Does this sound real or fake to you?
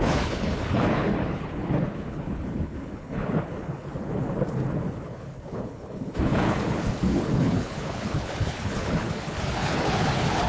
fake